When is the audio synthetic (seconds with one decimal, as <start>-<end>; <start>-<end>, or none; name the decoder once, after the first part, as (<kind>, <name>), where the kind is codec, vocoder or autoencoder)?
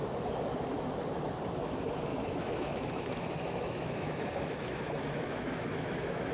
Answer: 2.1-6.3 (autoencoder, DAC-VAE)